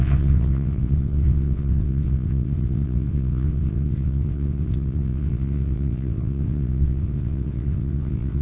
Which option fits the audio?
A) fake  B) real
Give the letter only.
A